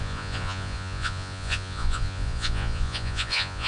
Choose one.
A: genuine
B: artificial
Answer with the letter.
B